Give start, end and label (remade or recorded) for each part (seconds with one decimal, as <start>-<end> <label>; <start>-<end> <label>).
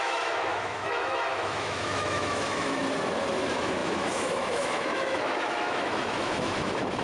0.0-2.8 remade; 2.8-3.3 recorded; 3.3-7.0 remade